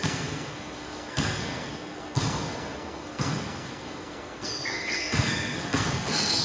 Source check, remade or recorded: remade